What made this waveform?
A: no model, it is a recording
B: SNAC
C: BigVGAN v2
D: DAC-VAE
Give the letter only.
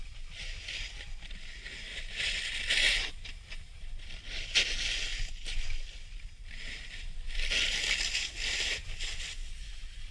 A